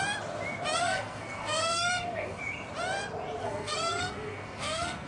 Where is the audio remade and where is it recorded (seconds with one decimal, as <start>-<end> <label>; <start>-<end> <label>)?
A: 0.0-0.8 recorded; 0.8-2.4 remade; 2.4-3.4 recorded; 3.4-5.1 remade